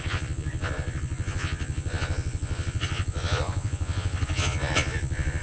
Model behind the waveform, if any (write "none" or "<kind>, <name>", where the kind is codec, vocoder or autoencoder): vocoder, Vocos